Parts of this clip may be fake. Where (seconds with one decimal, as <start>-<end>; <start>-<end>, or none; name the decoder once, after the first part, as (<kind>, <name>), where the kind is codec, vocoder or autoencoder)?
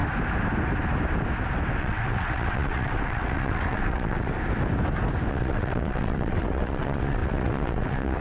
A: 1.8-4.3 (vocoder, WaveNeXt); 5.3-8.2